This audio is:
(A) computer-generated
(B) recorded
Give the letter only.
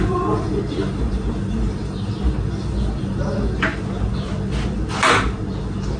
B